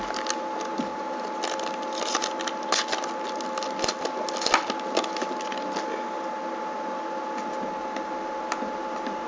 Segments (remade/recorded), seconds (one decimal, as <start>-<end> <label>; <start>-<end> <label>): 0.0-9.3 recorded